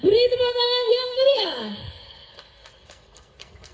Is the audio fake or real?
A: fake